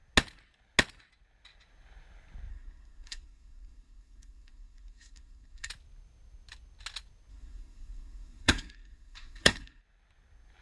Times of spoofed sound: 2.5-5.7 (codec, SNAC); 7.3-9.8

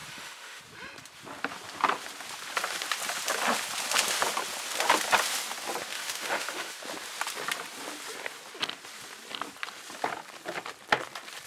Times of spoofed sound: 0.0-0.6 (autoencoder, DAC-VAE); 5.9-6.8

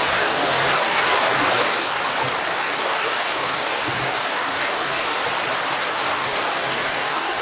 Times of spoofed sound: 0.0-2.0 (codec, DAC); 2.5-5.2; 5.9-7.4

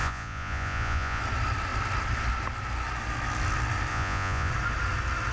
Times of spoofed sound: 0.0-1.2 (vocoder, Vocos); 3.9-4.5

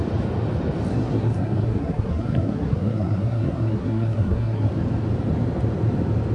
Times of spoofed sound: 0.9-4.7 (codec, SNAC)

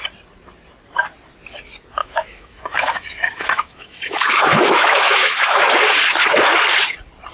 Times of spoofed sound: 2.0-5.7 (autoencoder, DAC-VAE)